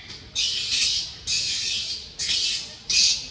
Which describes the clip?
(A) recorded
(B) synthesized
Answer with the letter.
A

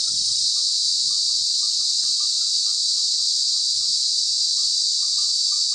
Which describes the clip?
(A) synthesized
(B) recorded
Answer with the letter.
B